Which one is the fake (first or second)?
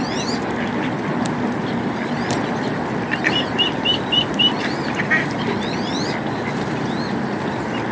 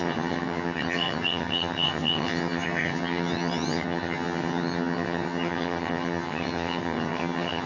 second